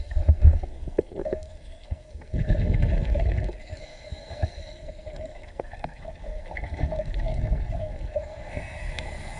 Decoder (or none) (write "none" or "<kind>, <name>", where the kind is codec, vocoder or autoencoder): codec, SNAC